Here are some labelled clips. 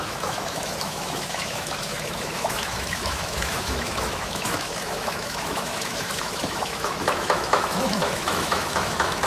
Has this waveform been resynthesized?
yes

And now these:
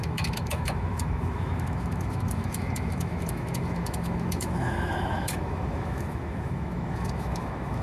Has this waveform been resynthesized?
yes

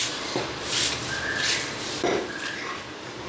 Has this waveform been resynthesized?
no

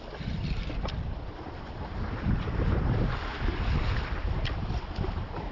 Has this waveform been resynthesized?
no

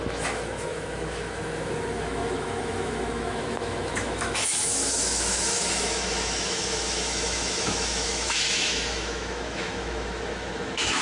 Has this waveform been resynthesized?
yes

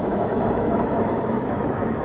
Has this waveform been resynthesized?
yes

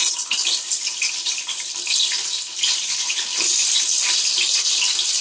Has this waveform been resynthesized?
no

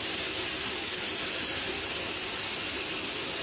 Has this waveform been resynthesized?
no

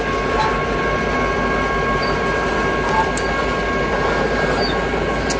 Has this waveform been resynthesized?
no